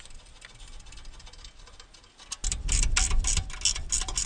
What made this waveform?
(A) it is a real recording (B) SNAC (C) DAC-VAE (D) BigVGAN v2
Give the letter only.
A